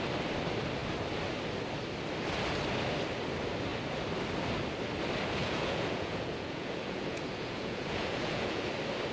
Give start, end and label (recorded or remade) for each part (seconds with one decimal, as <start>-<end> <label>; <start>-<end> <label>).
0.0-5.4 recorded; 5.4-8.7 remade; 8.7-9.1 recorded